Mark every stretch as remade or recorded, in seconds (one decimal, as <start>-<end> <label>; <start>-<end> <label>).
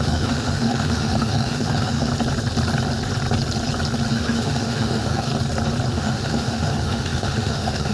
0.0-2.1 remade; 2.1-4.1 recorded; 4.1-5.3 remade; 5.3-5.9 recorded; 5.9-7.9 remade